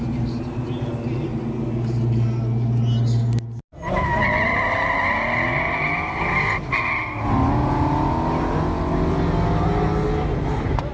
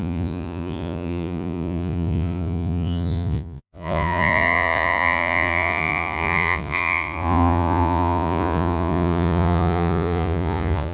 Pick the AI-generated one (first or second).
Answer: second